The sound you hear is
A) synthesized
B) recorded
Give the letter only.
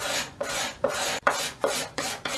A